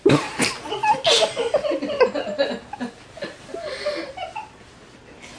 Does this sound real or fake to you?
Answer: real